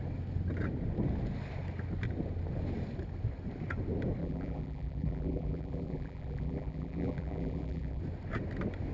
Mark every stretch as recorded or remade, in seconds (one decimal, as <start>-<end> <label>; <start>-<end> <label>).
0.0-4.2 recorded; 4.2-8.0 remade; 8.0-8.9 recorded